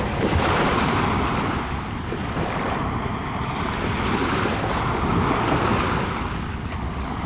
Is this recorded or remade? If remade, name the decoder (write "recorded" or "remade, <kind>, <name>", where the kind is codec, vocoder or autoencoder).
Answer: recorded